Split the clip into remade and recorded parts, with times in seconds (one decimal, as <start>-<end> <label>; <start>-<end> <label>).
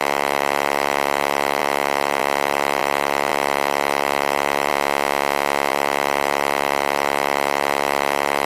0.0-4.7 remade; 4.7-5.7 recorded; 5.7-8.4 remade